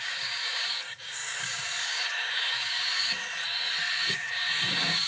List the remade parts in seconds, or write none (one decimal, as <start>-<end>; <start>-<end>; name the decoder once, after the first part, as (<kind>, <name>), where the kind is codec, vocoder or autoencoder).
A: 0.0-3.2 (codec, DAC); 3.8-5.1